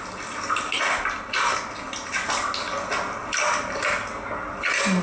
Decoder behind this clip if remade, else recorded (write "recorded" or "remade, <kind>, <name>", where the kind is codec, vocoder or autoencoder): recorded